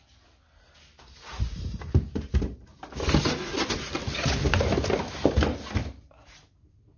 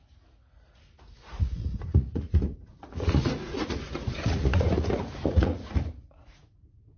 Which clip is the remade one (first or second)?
second